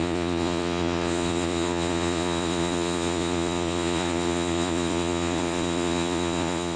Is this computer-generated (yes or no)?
yes